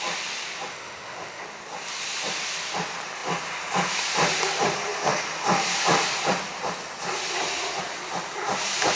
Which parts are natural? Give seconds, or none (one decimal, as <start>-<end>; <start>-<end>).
0.0-0.7; 1.4-9.0